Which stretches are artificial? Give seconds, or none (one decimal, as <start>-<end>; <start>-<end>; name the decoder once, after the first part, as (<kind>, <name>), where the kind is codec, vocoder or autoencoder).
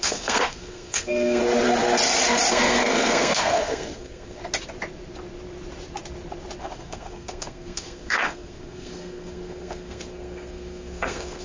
0.0-1.4 (codec, SNAC); 2.5-4.4; 6.6-11.4